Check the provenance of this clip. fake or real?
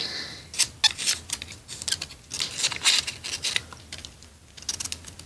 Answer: real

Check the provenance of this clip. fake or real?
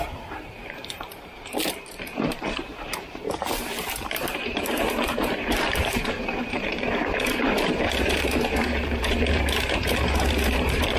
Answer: fake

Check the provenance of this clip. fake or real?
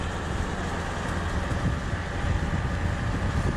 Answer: real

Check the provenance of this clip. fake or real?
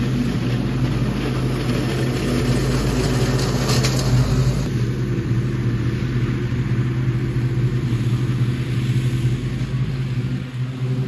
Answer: real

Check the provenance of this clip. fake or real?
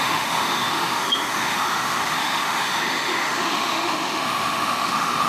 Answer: fake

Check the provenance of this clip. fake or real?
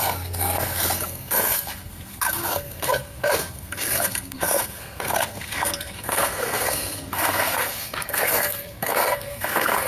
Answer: fake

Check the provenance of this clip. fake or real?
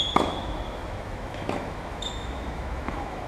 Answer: fake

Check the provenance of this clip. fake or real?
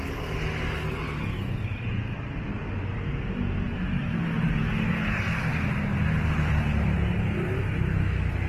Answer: real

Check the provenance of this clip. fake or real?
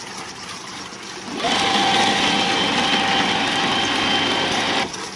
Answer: real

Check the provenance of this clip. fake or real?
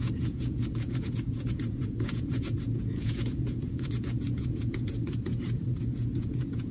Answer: fake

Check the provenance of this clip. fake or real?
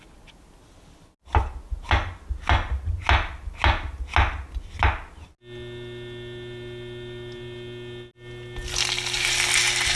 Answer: real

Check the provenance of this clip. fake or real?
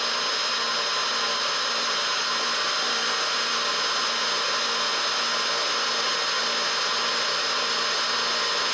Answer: real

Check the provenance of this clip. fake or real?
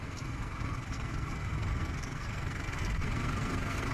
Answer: fake